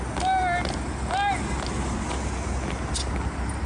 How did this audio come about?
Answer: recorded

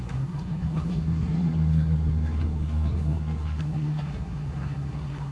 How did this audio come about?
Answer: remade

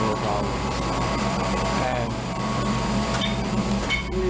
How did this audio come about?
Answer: remade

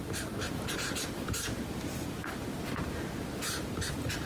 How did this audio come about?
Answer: remade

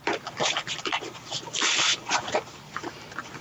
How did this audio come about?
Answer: remade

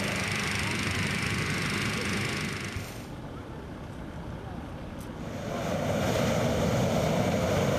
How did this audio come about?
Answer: remade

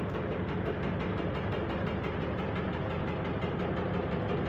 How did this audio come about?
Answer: recorded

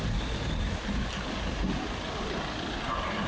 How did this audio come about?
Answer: recorded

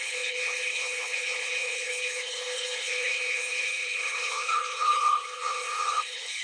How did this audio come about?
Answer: remade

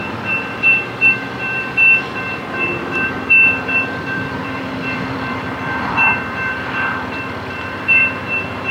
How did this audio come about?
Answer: remade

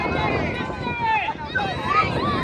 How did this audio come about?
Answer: recorded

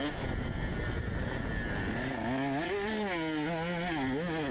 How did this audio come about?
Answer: recorded